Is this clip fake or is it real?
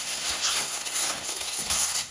fake